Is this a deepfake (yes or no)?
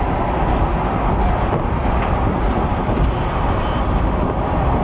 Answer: no